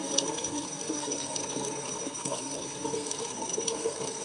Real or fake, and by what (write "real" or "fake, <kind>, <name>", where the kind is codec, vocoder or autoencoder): fake, codec, SNAC